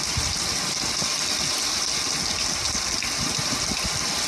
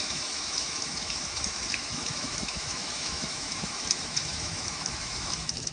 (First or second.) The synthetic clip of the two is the second